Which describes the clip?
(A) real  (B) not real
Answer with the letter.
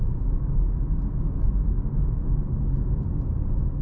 A